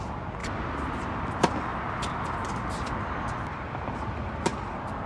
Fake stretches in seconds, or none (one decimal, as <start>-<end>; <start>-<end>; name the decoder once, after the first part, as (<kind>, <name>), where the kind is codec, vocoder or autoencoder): none

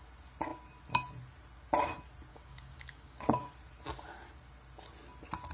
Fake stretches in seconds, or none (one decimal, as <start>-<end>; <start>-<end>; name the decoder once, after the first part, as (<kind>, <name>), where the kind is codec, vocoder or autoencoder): 2.3-3.5 (codec, DAC)

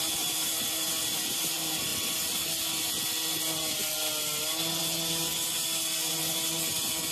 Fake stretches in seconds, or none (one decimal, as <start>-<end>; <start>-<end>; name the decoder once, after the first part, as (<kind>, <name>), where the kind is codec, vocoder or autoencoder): 0.0-1.9 (vocoder, BigVGAN v2); 3.4-3.8; 4.8-5.3; 6.1-7.1

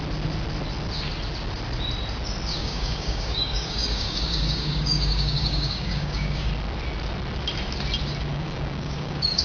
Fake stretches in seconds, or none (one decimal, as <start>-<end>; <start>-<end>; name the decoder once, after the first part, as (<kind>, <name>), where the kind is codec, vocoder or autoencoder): 2.5-6.5 (codec, DAC); 8.3-9.4

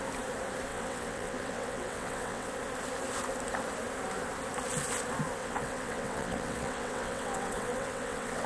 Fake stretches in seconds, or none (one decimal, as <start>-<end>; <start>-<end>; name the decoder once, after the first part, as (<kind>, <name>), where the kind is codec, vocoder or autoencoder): 0.7-2.5 (vocoder, WaveNeXt); 5.4-8.5